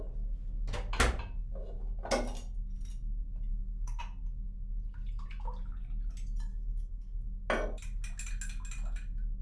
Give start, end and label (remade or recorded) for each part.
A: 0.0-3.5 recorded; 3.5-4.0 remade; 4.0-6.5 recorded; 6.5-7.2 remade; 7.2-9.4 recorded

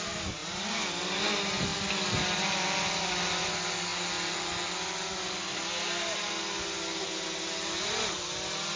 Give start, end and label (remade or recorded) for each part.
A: 0.0-8.8 recorded